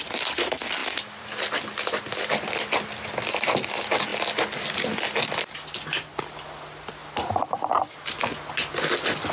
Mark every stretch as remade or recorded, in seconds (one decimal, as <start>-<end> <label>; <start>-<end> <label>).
0.0-7.0 recorded; 7.0-8.2 remade; 8.2-9.3 recorded